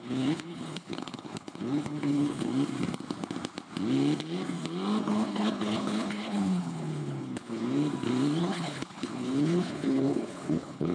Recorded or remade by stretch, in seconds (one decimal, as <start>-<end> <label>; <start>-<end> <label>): 0.0-2.5 remade; 2.5-5.0 recorded; 5.0-7.6 remade; 7.6-8.4 recorded; 8.4-10.9 remade